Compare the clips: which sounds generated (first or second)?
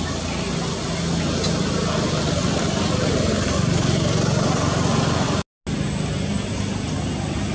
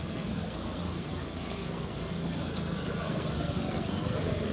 second